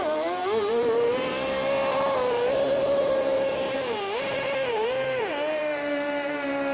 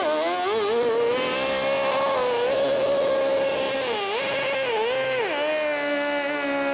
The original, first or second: second